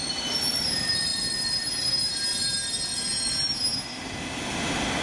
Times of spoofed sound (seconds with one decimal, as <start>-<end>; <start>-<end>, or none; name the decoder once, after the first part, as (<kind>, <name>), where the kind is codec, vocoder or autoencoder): none